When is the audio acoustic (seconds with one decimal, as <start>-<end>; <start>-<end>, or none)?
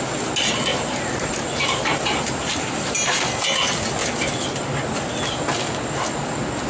0.0-0.7; 3.3-6.7